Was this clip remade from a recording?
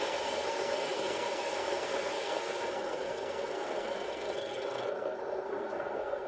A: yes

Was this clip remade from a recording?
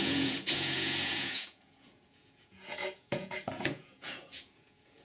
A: yes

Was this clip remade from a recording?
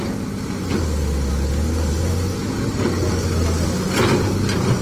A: no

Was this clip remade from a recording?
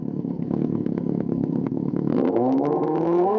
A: yes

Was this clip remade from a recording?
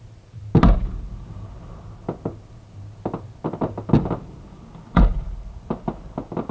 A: no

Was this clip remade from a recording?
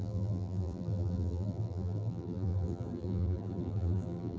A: yes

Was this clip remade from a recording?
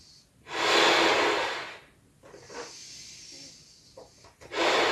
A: no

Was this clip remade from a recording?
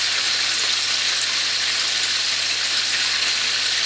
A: no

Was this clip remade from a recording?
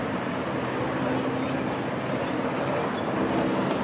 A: no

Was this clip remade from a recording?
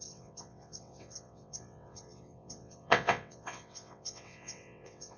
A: yes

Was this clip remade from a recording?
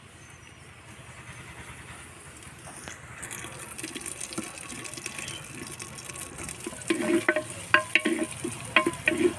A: no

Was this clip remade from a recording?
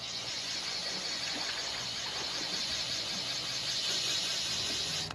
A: yes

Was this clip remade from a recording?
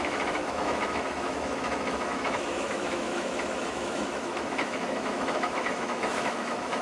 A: yes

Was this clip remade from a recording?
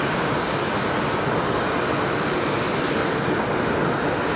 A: no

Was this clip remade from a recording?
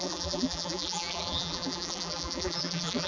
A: yes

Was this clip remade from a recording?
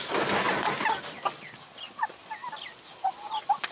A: no